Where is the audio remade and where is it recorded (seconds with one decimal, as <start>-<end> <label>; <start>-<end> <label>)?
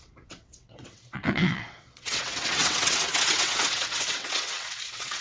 0.0-5.2 remade